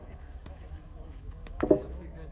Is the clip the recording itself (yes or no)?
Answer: no